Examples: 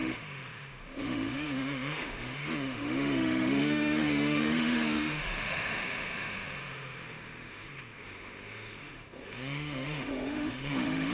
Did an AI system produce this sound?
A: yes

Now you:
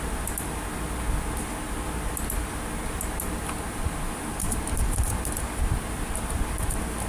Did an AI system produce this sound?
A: no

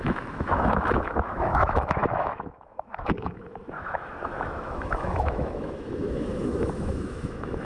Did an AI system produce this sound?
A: yes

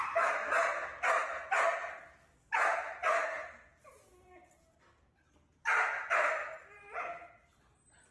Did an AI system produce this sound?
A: no